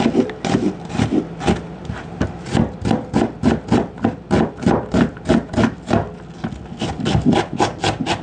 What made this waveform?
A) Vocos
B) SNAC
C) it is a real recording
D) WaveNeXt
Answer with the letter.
C